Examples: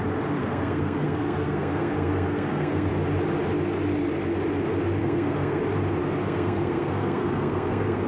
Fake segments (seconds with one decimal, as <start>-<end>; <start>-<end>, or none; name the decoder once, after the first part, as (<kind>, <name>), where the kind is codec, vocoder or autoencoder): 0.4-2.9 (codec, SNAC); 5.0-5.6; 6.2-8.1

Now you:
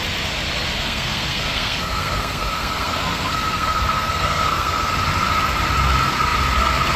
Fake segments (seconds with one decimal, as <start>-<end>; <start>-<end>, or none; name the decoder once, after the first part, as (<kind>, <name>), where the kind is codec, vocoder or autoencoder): 0.7-4.9 (codec, SNAC)

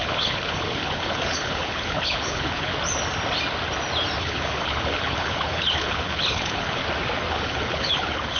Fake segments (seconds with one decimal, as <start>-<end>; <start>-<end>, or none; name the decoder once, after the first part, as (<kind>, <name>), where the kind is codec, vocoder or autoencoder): 0.0-2.7 (codec, HILCodec); 4.2-6.8; 7.3-8.4

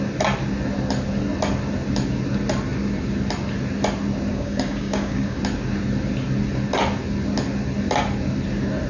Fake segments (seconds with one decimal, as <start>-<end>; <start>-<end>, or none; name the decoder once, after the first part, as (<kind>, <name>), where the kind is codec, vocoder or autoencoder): 4.3-5.4 (codec, DAC)